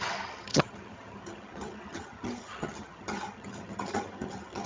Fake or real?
fake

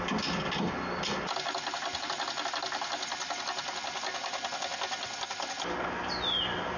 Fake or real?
real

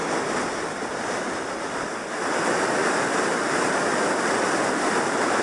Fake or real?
real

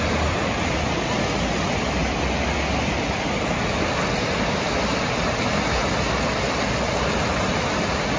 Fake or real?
real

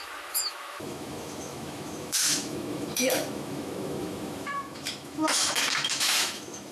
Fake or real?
fake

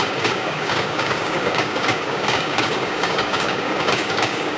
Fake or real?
fake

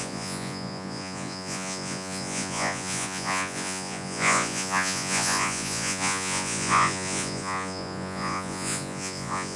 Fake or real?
fake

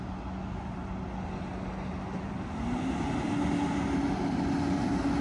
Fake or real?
real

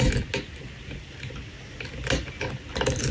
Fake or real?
real